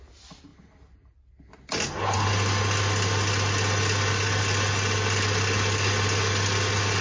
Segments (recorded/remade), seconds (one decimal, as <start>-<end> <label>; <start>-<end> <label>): 0.0-7.0 recorded